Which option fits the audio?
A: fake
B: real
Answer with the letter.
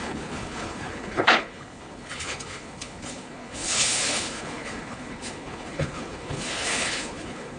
A